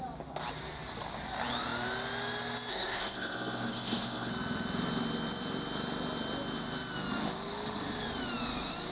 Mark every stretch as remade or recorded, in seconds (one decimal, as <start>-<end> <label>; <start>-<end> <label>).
0.0-2.7 recorded; 2.7-4.3 remade; 4.3-8.9 recorded